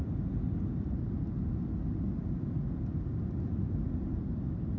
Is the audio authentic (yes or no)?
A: yes